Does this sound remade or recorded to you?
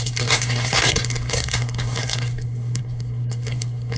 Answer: remade